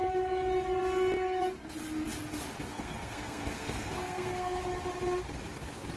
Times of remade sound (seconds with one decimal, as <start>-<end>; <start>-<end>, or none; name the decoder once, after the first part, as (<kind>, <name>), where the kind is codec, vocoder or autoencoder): 2.7-4.6 (codec, SNAC)